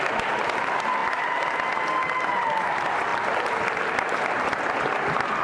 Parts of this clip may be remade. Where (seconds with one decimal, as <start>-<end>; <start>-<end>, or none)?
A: none